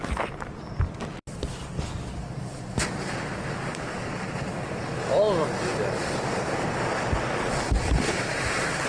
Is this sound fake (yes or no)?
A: no